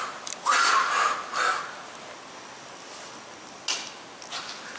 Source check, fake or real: real